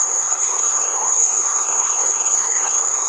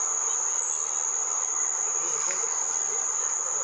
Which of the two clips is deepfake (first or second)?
first